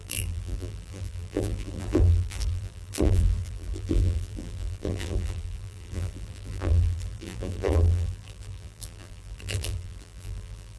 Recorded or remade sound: remade